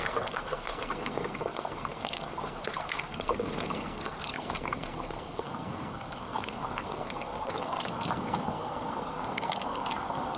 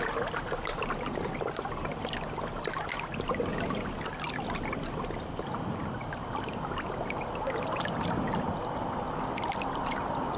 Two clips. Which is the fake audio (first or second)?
first